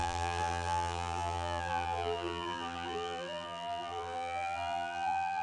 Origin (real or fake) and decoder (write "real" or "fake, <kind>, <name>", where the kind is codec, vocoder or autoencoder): fake, vocoder, BigVGAN v2